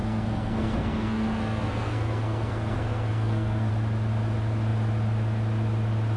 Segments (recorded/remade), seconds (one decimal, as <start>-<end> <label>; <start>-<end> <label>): 0.0-3.7 remade; 3.7-6.2 recorded